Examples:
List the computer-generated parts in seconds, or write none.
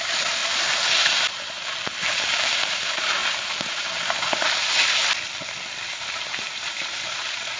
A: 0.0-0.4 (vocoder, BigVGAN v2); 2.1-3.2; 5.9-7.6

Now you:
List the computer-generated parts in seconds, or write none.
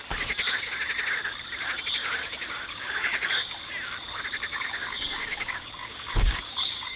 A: 2.0-3.7 (codec, DAC); 4.5-7.0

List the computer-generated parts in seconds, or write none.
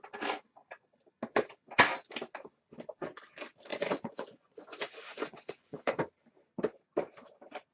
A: 3.7-6.0 (vocoder, Vocos)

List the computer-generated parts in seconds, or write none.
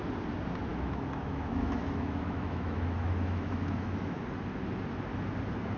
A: 0.7-4.2 (autoencoder, DAC-VAE)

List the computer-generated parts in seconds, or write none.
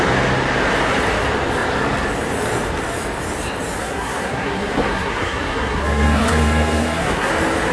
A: 3.8-7.3 (codec, SNAC)